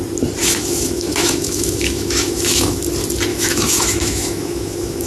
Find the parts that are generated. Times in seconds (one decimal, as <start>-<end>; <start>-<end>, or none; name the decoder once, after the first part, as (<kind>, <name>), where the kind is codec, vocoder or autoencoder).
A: 0.4-2.8 (autoencoder, DAC-VAE); 3.3-5.1